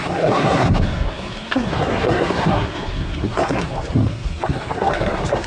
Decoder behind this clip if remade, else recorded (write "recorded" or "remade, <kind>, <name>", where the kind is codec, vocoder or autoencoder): remade, codec, SNAC